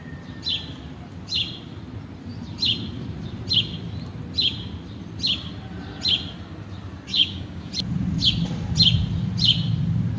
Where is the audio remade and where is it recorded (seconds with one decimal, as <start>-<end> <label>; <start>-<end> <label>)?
0.0-7.1 recorded; 7.1-7.7 remade; 7.7-10.2 recorded